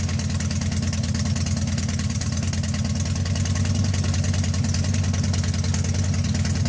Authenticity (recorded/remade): recorded